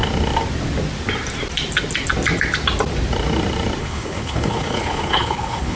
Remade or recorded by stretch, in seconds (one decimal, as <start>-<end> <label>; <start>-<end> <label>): 0.0-3.8 recorded; 3.8-5.8 remade

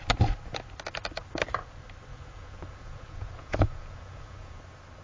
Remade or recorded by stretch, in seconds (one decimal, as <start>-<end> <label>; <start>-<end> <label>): 0.0-2.1 recorded; 2.1-4.6 remade; 4.6-5.0 recorded

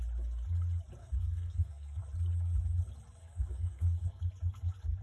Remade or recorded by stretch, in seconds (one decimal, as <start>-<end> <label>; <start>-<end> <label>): 0.0-1.0 recorded; 1.0-2.0 remade; 2.0-3.2 recorded; 3.2-4.2 remade; 4.2-5.0 recorded

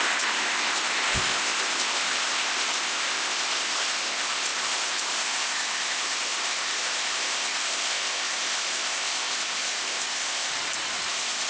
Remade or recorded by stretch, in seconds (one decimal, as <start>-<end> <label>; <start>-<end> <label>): 0.0-10.5 remade; 10.5-11.1 recorded; 11.1-11.5 remade

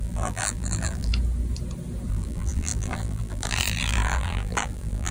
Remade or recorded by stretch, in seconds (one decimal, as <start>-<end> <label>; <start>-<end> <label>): 0.0-1.1 remade; 1.1-2.1 recorded; 2.1-5.1 remade